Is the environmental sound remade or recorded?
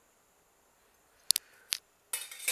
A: recorded